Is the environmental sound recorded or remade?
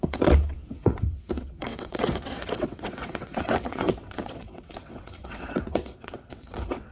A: remade